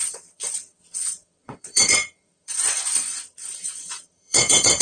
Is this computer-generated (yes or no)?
yes